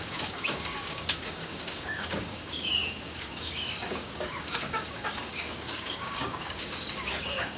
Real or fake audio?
fake